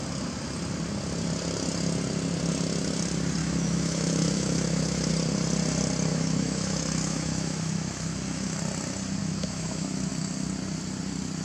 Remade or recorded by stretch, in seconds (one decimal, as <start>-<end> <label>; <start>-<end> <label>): 0.0-3.4 recorded; 3.4-5.1 remade; 5.1-6.1 recorded; 6.1-8.6 remade; 8.6-9.2 recorded; 9.2-10.1 remade; 10.1-11.4 recorded